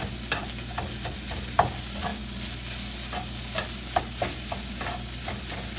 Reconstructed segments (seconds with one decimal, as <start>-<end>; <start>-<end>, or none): none